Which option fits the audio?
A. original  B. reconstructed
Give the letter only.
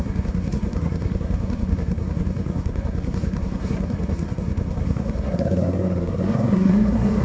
B